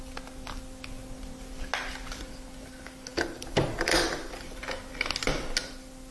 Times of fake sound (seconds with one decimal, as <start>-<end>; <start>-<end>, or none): 3.1-4.6